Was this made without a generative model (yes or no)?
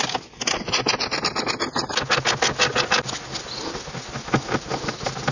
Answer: yes